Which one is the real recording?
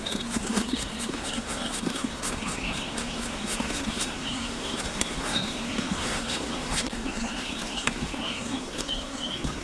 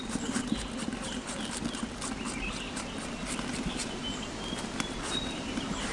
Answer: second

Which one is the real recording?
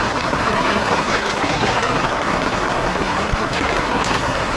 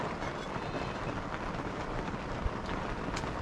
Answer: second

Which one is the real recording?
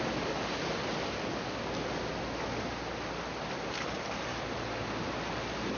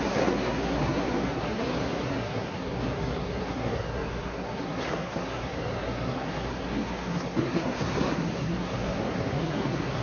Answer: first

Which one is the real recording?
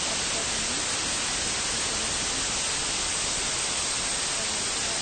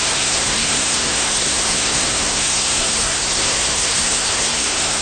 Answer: first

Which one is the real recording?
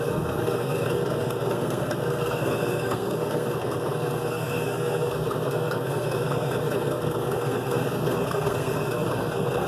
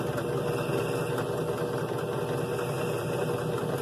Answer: second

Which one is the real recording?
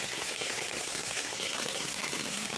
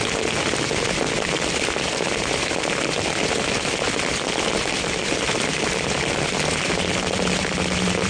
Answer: second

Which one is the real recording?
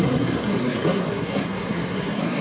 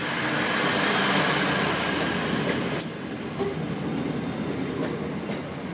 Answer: second